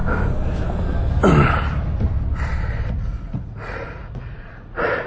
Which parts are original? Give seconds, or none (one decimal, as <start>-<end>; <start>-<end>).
0.0-2.9